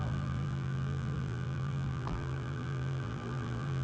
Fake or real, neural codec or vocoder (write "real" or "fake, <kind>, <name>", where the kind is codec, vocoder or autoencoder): fake, vocoder, BigVGAN v2